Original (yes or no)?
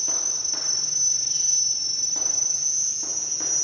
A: yes